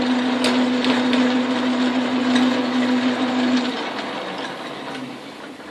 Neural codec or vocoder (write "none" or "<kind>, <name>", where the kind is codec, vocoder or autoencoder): none